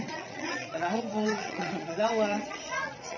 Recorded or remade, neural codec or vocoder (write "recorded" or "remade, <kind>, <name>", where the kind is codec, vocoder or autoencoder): remade, vocoder, Vocos